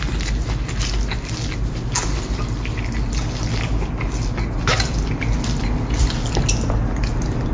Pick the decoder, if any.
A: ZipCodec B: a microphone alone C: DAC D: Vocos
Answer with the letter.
B